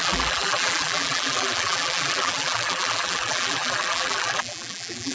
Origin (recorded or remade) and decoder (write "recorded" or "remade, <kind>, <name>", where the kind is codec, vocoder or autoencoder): remade, vocoder, BigVGAN v2